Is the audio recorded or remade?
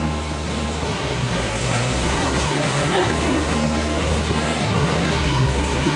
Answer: remade